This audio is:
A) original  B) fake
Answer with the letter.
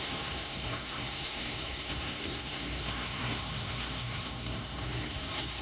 B